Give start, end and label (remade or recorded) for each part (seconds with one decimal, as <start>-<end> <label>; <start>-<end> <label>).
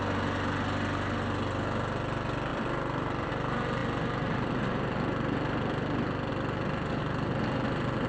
0.0-2.5 recorded; 2.5-3.3 remade; 3.3-8.1 recorded